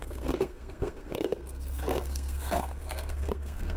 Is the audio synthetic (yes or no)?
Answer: yes